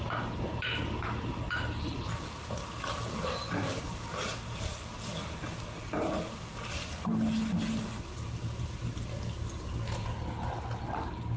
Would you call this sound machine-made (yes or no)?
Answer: no